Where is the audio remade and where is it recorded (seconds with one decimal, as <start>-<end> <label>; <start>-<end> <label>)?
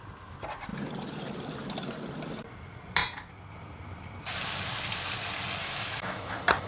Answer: 0.0-5.6 recorded; 5.6-6.3 remade; 6.3-6.7 recorded